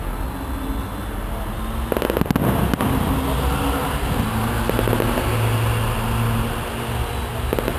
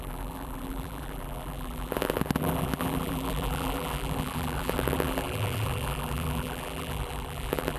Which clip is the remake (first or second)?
second